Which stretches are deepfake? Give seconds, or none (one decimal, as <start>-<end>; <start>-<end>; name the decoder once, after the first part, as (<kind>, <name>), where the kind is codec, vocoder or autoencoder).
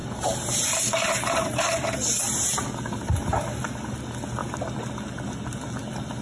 0.0-3.7 (vocoder, BigVGAN v2)